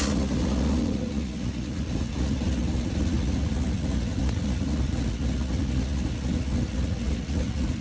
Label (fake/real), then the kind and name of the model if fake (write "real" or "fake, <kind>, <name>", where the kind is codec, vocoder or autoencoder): fake, vocoder, Vocos